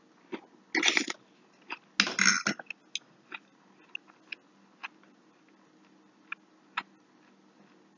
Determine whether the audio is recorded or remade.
recorded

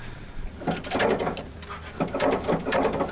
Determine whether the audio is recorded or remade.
recorded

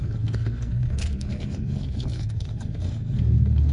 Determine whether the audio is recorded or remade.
remade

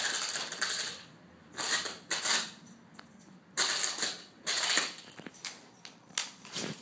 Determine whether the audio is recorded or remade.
recorded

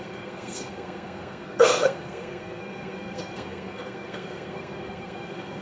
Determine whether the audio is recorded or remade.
remade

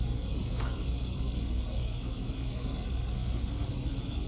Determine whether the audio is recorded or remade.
remade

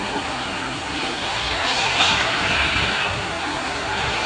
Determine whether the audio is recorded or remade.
remade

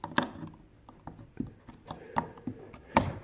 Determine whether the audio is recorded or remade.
recorded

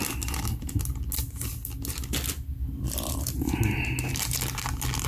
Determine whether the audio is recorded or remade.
recorded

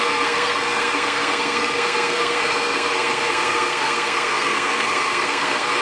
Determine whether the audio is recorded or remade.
remade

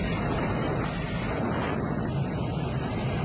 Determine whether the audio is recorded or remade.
recorded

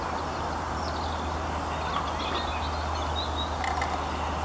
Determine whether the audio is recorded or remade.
recorded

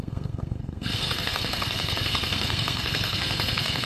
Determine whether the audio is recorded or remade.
remade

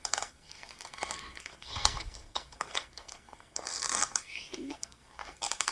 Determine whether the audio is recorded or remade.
remade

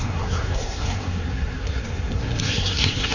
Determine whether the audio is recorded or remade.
remade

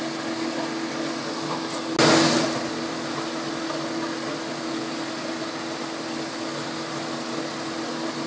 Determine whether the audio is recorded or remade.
recorded